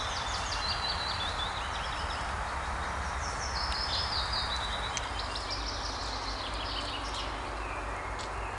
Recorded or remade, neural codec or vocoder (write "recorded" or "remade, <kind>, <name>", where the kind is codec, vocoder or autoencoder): recorded